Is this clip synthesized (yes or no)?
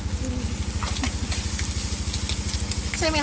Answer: no